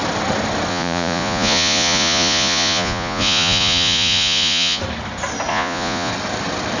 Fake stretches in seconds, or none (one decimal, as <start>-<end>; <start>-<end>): 0.7-4.8; 5.5-6.1

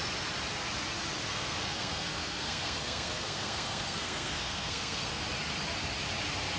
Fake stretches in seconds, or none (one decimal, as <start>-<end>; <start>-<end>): 1.2-5.2

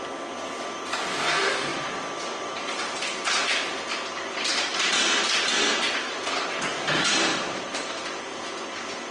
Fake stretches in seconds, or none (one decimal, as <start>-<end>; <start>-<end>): 1.7-3.0; 7.3-8.3

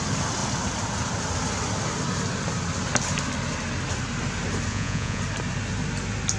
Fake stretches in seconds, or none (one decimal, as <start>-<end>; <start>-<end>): 4.7-5.2

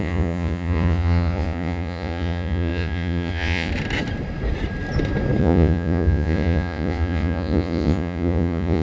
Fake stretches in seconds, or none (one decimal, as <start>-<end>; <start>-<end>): 0.0-3.7; 5.4-8.8